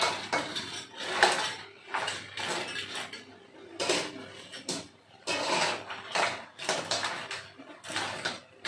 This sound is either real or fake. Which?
fake